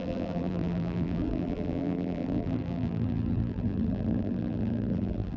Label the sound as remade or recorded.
remade